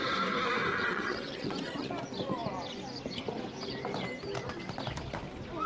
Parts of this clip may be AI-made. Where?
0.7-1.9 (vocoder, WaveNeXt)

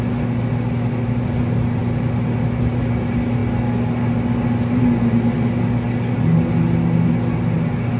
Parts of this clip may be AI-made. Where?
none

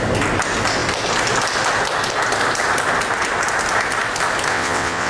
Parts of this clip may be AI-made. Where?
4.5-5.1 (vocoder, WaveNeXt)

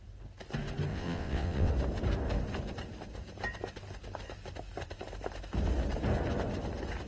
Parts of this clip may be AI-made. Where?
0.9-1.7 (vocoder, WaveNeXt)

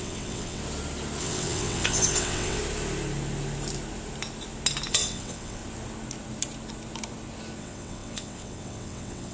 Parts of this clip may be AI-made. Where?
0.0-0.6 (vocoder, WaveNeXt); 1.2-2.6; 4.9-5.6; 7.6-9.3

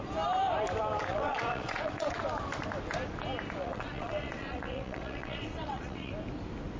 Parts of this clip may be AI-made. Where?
1.1-2.2 (vocoder, WaveNeXt); 3.6-6.1

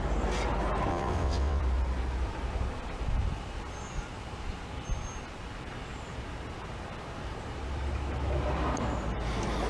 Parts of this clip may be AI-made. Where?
0.9-1.6 (vocoder, WaveNeXt)